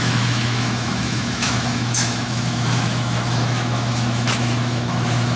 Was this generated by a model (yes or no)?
yes